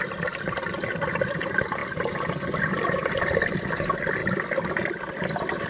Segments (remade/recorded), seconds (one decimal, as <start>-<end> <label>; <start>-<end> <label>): 0.0-5.7 recorded